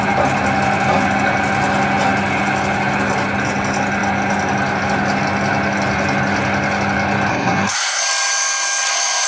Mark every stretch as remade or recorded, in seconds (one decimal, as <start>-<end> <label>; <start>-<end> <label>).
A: 0.0-7.3 recorded; 7.3-8.0 remade; 8.0-9.3 recorded